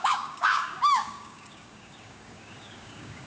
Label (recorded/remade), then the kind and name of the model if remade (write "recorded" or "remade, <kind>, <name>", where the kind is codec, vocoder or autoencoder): remade, codec, DAC